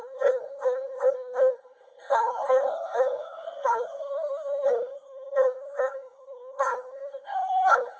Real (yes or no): no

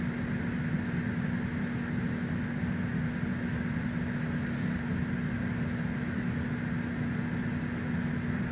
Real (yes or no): yes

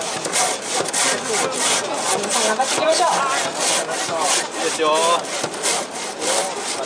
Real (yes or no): yes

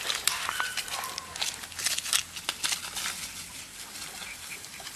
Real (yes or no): yes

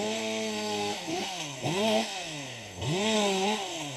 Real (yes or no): no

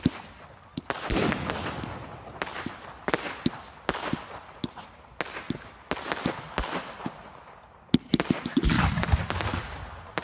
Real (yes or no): yes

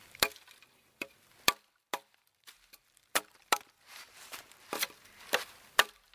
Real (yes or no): no